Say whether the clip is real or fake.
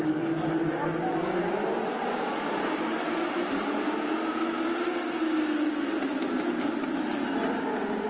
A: real